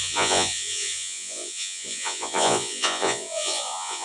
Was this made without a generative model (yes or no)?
no